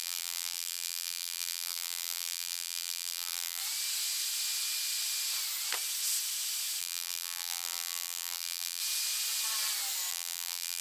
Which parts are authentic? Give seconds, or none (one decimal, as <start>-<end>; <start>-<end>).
3.6-6.8; 8.8-10.1